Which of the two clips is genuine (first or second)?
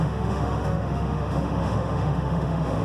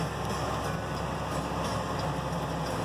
second